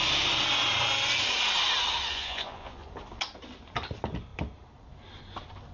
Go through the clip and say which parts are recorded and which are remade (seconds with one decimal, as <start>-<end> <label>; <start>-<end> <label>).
0.0-2.1 recorded; 2.1-2.9 remade; 2.9-5.7 recorded